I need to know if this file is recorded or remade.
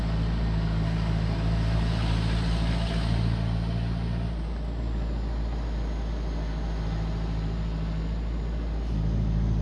recorded